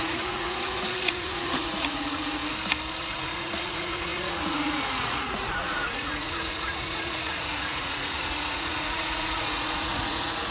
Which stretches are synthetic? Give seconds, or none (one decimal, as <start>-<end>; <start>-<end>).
0.0-2.4; 3.0-10.5